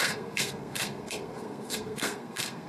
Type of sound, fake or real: fake